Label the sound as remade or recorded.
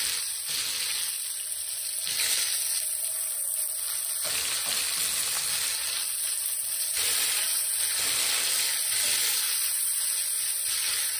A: recorded